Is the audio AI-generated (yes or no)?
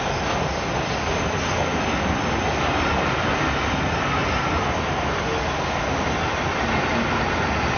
no